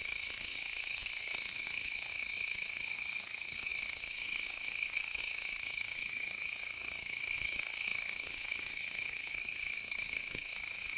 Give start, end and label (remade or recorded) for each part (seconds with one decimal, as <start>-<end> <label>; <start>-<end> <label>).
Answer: 0.0-11.0 remade